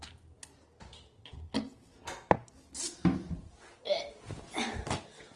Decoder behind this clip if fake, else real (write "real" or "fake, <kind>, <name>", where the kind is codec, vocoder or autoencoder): real